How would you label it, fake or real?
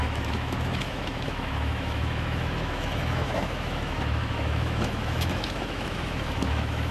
fake